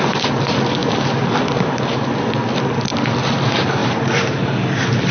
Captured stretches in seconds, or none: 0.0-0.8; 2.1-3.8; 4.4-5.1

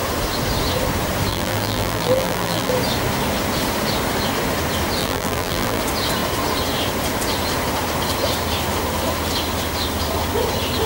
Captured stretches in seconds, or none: 0.0-1.3; 2.7-5.0; 5.8-10.9

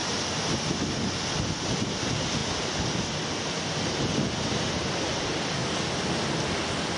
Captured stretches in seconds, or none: 0.7-7.0

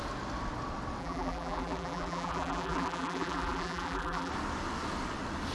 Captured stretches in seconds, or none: 0.0-1.0; 4.3-5.5

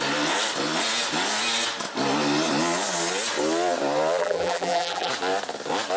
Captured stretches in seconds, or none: 0.0-4.2; 5.1-6.0

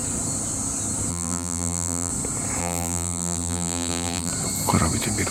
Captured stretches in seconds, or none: 0.0-1.1; 2.1-2.6; 4.3-5.3

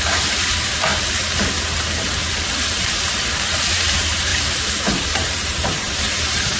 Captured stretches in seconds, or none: 0.9-1.6; 2.2-3.7; 4.3-5.0